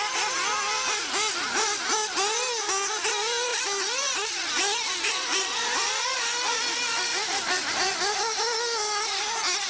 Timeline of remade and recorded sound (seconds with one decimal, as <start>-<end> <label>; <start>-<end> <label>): 0.0-3.5 recorded; 3.5-7.7 remade; 7.7-9.7 recorded